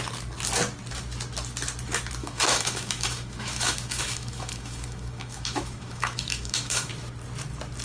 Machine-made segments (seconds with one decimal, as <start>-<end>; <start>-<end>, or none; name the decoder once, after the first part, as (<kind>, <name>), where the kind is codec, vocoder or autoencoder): 2.2-6.9 (autoencoder, DAC-VAE)